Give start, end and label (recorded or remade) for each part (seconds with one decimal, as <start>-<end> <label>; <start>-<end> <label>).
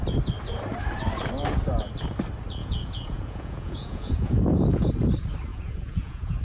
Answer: 0.0-2.6 recorded; 2.6-4.9 remade; 4.9-5.5 recorded; 5.5-6.4 remade